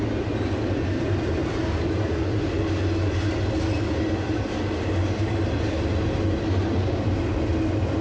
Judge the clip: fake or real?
real